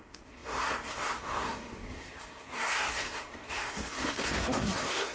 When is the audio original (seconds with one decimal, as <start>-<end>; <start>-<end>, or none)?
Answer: none